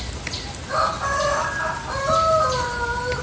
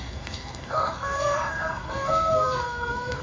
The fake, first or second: second